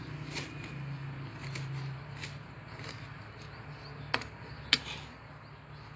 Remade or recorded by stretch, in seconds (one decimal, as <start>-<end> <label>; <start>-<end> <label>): 0.0-6.0 recorded